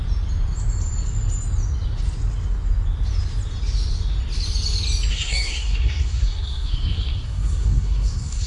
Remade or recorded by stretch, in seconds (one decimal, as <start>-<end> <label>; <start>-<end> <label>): 0.0-5.1 recorded; 5.1-8.5 remade